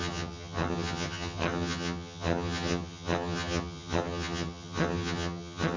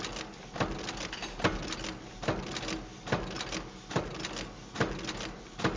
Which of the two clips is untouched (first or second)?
second